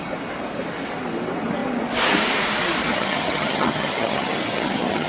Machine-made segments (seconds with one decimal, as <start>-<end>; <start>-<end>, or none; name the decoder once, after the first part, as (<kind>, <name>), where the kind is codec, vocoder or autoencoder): 2.8-5.1 (vocoder, HiFi-GAN)